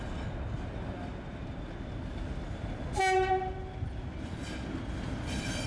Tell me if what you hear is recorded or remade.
recorded